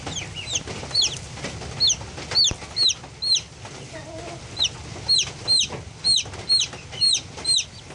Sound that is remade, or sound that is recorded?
recorded